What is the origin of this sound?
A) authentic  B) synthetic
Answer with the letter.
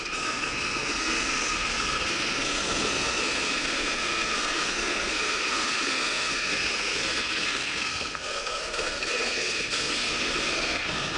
B